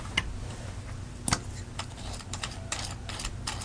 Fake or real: real